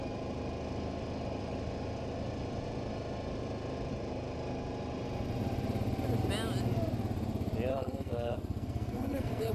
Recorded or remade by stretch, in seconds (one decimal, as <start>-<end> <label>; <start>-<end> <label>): 0.0-7.7 recorded; 7.7-9.5 remade